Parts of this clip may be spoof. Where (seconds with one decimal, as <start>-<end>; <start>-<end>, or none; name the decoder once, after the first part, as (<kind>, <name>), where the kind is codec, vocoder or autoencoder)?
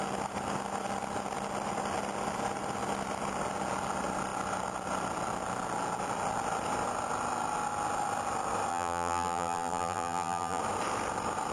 8.7-10.6 (vocoder, BigVGAN v2)